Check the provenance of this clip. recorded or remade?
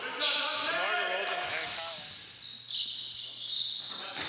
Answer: recorded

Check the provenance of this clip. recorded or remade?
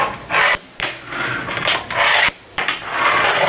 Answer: recorded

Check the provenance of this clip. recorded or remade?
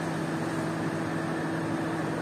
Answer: recorded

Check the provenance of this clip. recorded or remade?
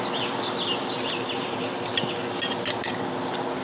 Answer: remade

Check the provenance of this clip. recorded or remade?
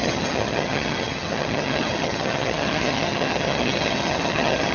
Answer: remade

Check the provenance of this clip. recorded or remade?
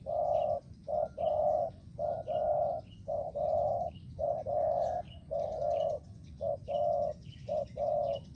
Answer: remade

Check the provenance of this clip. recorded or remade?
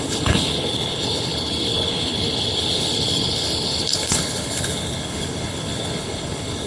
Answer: remade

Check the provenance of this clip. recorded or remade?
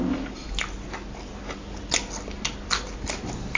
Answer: recorded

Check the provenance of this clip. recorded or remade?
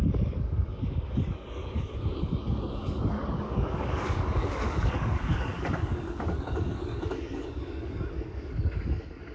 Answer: remade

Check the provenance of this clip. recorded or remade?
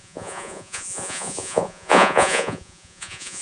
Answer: remade